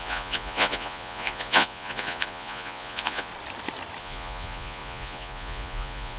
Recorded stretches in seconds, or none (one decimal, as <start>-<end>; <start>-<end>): 3.3-4.0